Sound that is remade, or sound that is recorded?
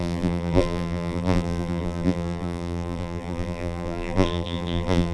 remade